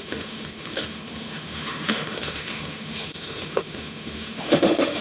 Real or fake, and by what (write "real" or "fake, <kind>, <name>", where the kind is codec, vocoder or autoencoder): fake, autoencoder, DAC-VAE